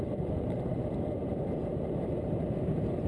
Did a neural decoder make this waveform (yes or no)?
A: yes